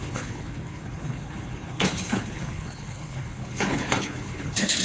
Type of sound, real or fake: fake